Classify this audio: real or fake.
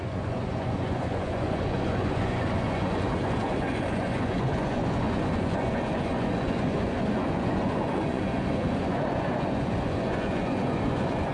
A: fake